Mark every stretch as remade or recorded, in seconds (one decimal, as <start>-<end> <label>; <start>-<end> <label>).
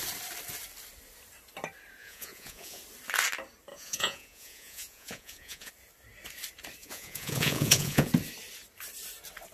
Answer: 0.0-2.0 recorded; 2.0-2.8 remade; 2.8-3.7 recorded; 3.7-5.7 remade; 5.7-6.8 recorded; 6.8-8.1 remade; 8.1-9.5 recorded